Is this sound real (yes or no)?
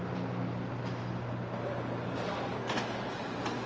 yes